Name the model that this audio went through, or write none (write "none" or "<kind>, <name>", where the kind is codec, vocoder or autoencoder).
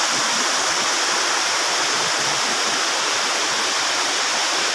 none